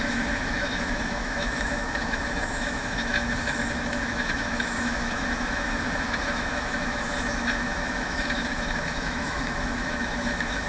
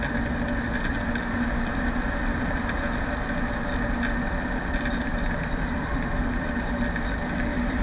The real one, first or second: second